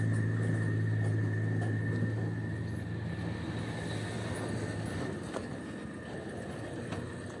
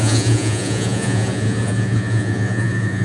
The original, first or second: first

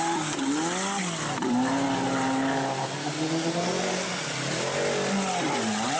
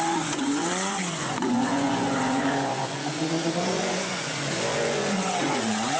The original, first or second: first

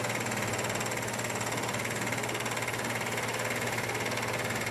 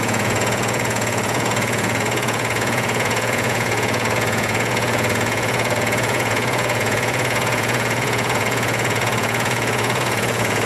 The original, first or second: first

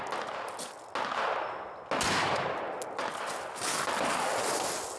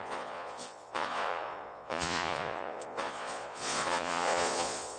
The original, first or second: first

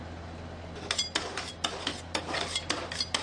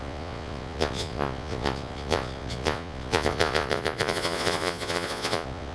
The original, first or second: first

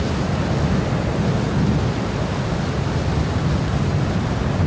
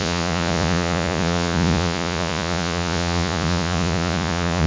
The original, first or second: first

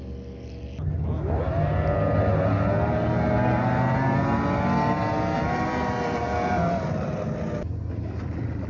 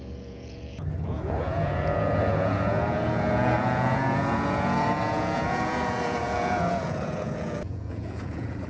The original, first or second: first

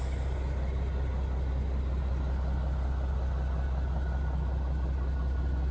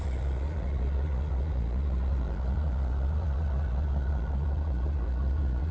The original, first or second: first